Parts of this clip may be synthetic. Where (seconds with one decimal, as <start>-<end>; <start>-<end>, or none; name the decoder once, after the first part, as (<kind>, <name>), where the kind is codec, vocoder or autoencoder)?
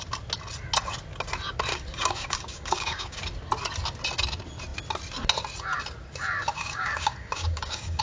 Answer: 1.7-3.2 (codec, DAC); 6.4-8.0